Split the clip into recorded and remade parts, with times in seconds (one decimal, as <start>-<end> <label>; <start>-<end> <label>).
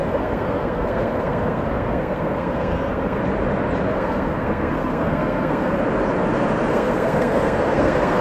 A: 0.0-3.2 remade; 3.2-3.9 recorded; 3.9-5.8 remade; 5.8-6.7 recorded; 6.7-8.2 remade